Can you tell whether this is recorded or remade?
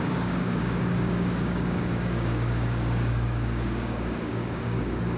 remade